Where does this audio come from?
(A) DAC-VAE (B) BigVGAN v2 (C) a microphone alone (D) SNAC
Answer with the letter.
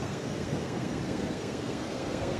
D